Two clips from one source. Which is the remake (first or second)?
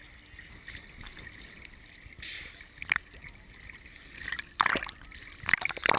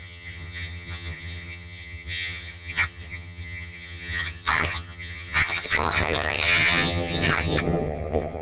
second